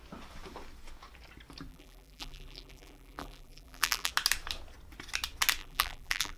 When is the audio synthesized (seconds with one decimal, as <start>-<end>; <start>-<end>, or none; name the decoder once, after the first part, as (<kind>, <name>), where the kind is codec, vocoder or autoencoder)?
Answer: 1.7-4.1 (vocoder, BigVGAN v2); 5.6-6.4